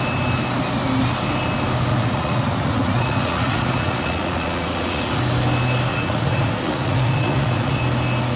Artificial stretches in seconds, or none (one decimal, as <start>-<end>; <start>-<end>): 1.9-5.2; 5.9-7.8

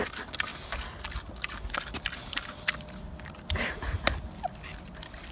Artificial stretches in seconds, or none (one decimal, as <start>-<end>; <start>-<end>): none

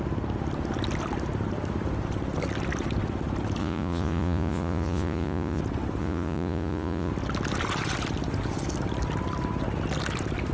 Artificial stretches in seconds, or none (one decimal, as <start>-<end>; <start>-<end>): 3.6-5.6; 6.0-7.1

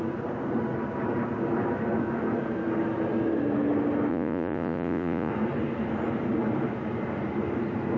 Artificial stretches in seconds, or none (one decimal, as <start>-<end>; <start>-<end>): 4.1-5.3

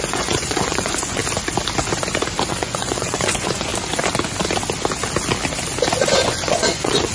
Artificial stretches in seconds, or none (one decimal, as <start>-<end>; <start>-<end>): 0.0-1.2; 2.5-3.7; 6.1-7.1

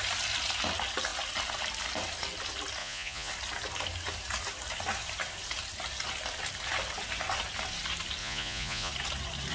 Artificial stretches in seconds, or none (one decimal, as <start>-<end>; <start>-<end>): 2.8-3.3; 8.2-8.9

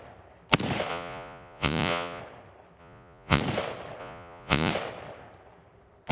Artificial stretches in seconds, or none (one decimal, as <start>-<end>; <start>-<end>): 0.9-2.2; 2.8-3.4; 4.0-4.7

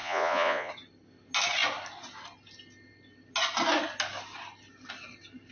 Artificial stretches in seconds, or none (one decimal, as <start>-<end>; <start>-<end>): 0.0-0.7